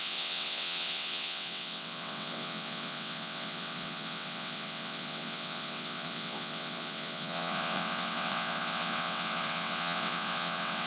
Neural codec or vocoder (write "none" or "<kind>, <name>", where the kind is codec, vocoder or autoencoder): vocoder, WaveNeXt